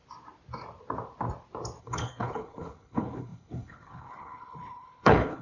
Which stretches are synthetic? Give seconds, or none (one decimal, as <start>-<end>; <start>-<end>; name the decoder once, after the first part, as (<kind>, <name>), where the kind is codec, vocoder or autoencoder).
1.8-5.4 (codec, HILCodec)